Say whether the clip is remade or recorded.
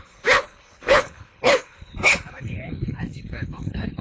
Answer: remade